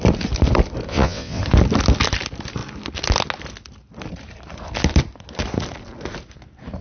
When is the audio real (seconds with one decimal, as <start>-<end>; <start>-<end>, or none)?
0.0-0.9; 1.4-6.8